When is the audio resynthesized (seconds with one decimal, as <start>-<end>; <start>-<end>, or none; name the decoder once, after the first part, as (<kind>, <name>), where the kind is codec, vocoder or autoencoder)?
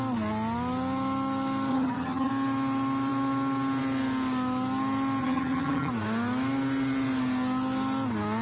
1.7-2.3 (vocoder, HiFi-GAN); 5.2-5.9